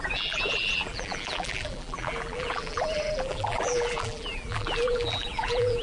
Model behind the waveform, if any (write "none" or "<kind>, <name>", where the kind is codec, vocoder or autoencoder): vocoder, BigVGAN v2